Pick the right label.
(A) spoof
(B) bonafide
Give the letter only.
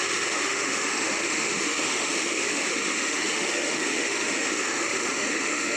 A